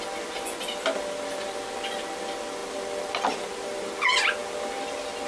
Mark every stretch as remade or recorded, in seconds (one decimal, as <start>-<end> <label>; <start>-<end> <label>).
0.0-5.3 recorded